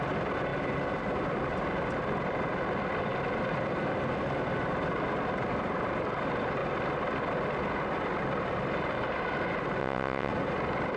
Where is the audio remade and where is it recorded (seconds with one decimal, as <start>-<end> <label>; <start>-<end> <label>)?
0.0-9.8 recorded; 9.8-10.3 remade; 10.3-11.0 recorded